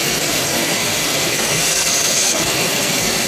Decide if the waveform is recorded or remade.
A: remade